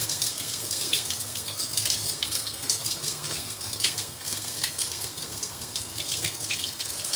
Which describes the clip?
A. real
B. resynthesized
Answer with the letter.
B